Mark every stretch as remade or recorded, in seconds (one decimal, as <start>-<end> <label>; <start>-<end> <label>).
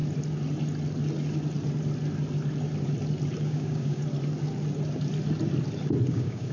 0.0-3.4 recorded; 3.4-4.0 remade; 4.0-6.1 recorded; 6.1-6.5 remade